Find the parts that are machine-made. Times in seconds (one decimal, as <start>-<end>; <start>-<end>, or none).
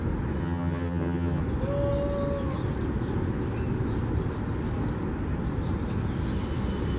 0.4-1.4